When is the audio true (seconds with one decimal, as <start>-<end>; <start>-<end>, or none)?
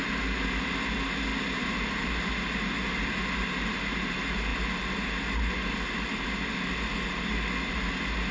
0.0-1.3; 2.3-8.3